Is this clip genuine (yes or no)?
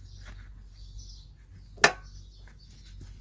yes